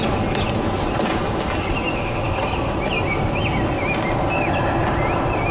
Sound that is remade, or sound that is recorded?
recorded